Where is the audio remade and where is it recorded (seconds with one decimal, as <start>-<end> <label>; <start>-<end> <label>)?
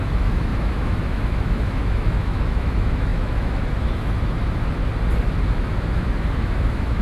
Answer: 0.0-4.8 remade; 4.8-5.6 recorded; 5.6-7.0 remade